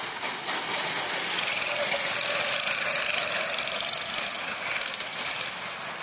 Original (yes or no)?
yes